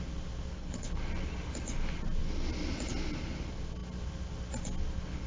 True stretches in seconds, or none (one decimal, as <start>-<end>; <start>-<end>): 0.0-0.5; 1.0-5.3